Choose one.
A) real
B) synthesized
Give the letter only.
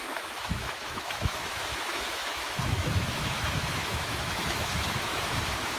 B